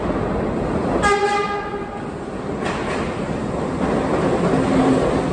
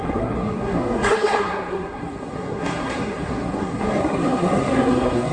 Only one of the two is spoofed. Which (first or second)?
second